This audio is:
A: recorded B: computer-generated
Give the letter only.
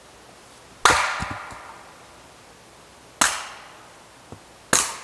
A